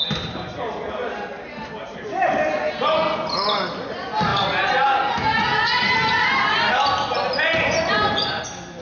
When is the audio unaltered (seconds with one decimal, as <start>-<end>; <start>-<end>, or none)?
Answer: 0.0-8.8